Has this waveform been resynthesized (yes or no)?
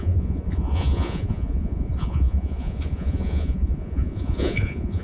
yes